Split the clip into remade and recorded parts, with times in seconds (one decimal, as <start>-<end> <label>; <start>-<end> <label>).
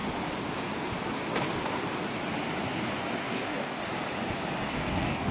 0.0-3.2 recorded; 3.2-3.8 remade; 3.8-4.7 recorded; 4.7-5.3 remade